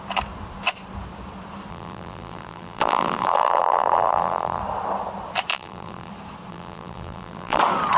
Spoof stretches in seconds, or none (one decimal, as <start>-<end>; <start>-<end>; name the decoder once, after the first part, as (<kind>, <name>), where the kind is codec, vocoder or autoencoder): 1.7-4.6 (vocoder, BigVGAN v2); 5.5-6.1; 6.5-7.6